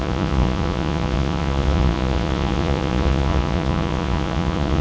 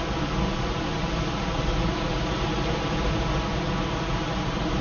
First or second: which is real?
second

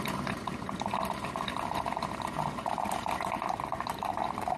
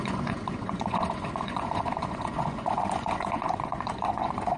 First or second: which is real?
first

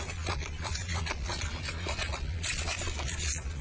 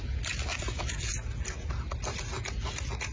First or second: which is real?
second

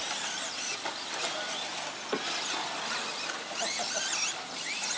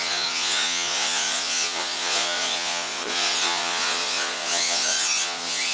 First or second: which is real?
first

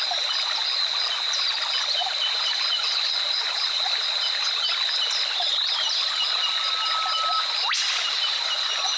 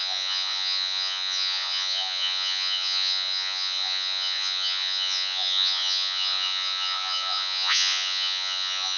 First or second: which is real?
first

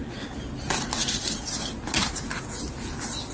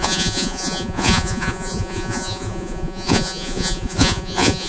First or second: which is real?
first